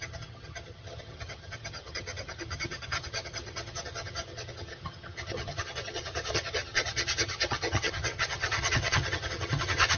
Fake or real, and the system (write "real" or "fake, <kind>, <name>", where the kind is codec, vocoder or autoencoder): fake, vocoder, HiFi-GAN